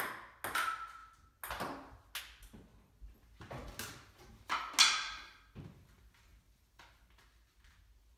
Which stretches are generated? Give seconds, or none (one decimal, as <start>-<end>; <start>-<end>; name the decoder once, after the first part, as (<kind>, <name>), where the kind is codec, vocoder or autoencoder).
none